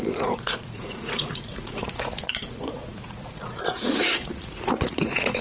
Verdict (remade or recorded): remade